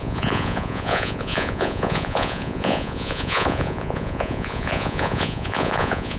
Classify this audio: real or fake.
fake